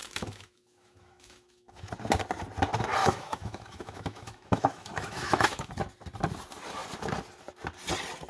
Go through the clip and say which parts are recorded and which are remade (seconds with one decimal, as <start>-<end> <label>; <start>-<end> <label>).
0.0-1.9 remade; 1.9-3.0 recorded; 3.0-5.7 remade; 5.7-8.3 recorded